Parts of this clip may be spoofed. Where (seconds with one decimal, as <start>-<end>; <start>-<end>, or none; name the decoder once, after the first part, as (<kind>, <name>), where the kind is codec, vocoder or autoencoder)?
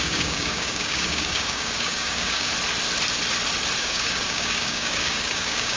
0.0-2.5 (codec, DAC); 3.8-5.8